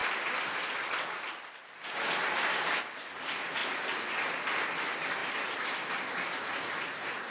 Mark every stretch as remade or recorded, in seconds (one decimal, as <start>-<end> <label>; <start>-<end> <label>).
0.0-7.3 recorded